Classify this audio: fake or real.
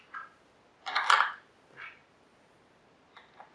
real